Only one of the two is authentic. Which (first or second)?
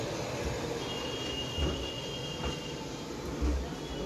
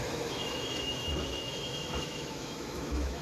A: first